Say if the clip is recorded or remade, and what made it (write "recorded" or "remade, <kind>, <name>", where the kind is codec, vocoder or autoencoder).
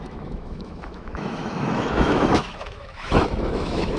remade, autoencoder, DAC-VAE